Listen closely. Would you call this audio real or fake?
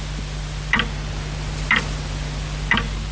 real